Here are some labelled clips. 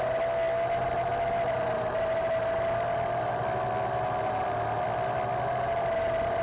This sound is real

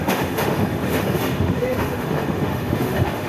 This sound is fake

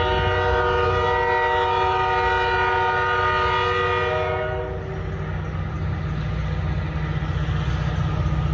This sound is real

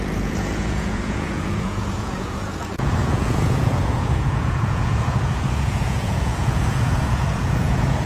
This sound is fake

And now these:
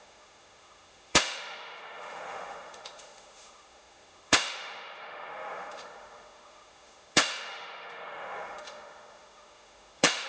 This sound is fake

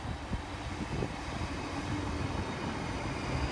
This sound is real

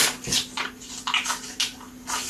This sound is real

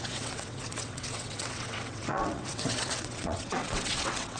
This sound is fake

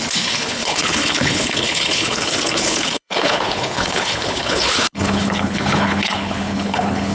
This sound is fake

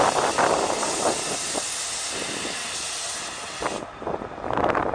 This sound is real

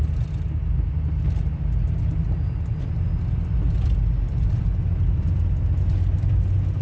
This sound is real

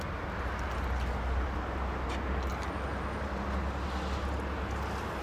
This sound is real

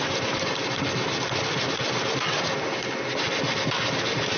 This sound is real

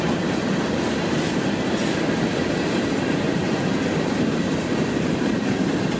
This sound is real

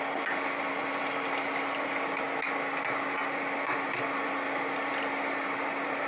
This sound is real